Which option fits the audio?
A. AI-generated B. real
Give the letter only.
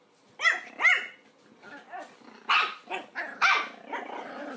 B